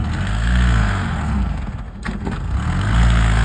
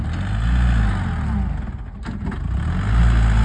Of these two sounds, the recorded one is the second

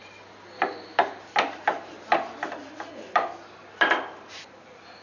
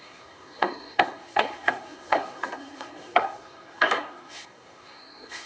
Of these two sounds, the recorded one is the first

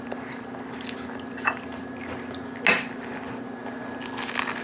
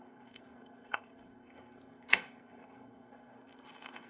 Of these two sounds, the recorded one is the first